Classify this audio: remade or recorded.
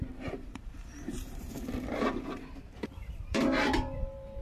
remade